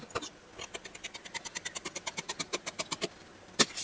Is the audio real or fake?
real